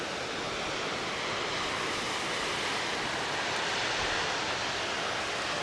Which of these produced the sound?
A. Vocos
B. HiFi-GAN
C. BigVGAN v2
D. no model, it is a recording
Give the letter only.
D